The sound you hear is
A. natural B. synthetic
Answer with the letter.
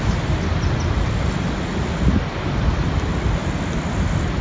A